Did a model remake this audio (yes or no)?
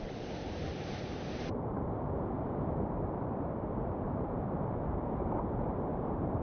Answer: yes